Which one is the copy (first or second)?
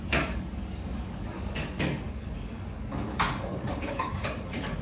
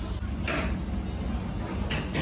first